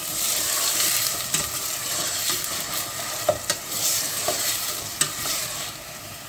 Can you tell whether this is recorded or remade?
remade